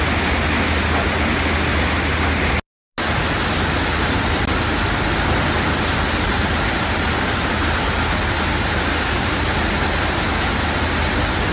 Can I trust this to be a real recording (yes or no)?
yes